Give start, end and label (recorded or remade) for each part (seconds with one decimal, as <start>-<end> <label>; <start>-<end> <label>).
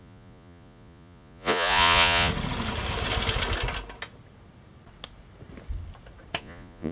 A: 0.0-2.3 remade; 2.3-6.4 recorded; 6.4-6.9 remade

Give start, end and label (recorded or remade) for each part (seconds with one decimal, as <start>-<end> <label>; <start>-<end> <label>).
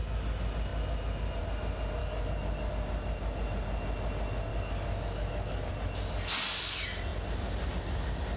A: 0.0-2.0 recorded; 2.0-2.7 remade; 2.7-4.5 recorded; 4.5-5.7 remade; 5.7-8.4 recorded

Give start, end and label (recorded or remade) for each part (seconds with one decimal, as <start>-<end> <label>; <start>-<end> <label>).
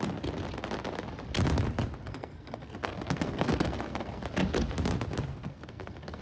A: 0.0-2.0 recorded; 2.0-4.2 remade; 4.2-5.3 recorded; 5.3-6.2 remade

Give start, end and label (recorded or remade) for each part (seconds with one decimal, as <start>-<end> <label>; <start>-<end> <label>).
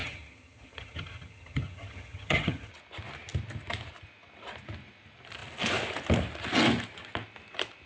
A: 0.0-2.7 remade; 2.7-7.9 recorded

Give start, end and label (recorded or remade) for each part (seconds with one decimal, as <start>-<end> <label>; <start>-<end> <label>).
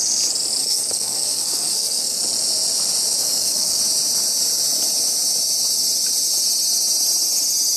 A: 0.0-0.6 recorded; 0.6-2.2 remade; 2.2-3.2 recorded; 3.2-3.8 remade; 3.8-7.8 recorded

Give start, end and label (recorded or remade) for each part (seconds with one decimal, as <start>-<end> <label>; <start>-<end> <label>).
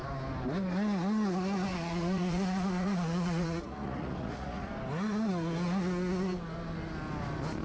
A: 0.0-1.7 recorded; 1.7-4.7 remade; 4.7-7.6 recorded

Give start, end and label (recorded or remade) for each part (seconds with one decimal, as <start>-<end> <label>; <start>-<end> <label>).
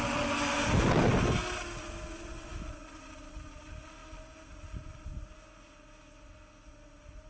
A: 0.0-7.3 recorded